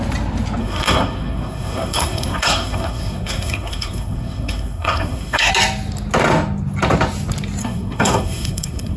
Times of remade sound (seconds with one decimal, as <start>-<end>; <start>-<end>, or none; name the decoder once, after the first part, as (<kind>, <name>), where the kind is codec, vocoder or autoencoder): 0.6-5.5 (codec, SNAC); 7.6-9.0

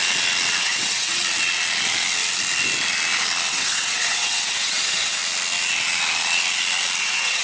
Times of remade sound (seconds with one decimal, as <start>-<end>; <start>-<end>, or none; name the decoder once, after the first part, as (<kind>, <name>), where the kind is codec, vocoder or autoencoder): 0.6-1.2 (vocoder, WaveNeXt); 3.5-5.2; 7.0-7.4

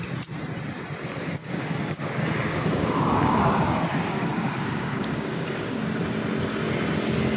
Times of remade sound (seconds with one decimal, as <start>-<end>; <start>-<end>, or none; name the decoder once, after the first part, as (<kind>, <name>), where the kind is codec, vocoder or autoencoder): 1.4-5.8 (codec, DAC)

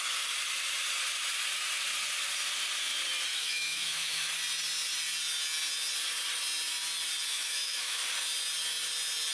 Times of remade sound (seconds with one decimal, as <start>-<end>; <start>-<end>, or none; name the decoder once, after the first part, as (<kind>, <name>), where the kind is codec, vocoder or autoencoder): 3.3-4.3 (autoencoder, DAC-VAE); 7.3-8.0

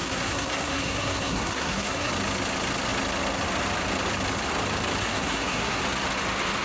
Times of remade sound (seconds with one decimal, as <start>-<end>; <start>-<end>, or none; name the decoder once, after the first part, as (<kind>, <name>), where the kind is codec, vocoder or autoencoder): 0.0-2.1 (codec, SNAC); 5.0-5.8

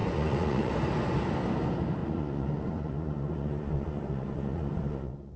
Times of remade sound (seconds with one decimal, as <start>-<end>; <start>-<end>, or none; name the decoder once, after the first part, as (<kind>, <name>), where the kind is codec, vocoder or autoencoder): 0.0-0.7 (vocoder, Vocos); 2.0-5.4